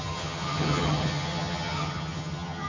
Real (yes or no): no